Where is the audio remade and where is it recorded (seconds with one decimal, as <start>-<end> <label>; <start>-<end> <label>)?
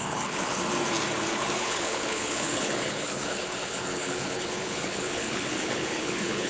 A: 0.0-0.6 remade; 0.6-1.2 recorded; 1.2-6.5 remade